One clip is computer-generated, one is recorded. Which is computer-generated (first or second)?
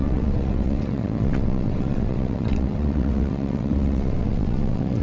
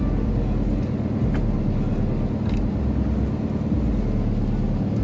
first